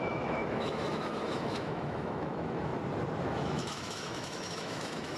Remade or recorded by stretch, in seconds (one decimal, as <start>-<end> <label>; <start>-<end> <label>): 0.0-2.7 remade; 2.7-3.2 recorded; 3.2-5.2 remade